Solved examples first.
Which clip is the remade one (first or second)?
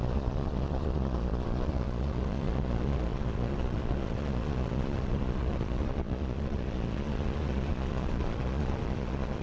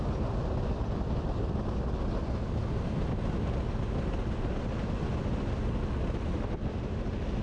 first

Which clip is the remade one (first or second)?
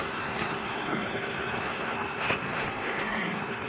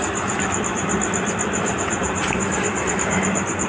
first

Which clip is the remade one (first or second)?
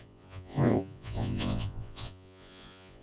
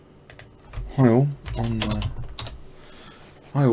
first